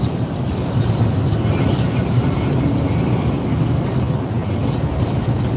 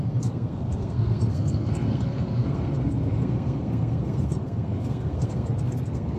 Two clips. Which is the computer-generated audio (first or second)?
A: second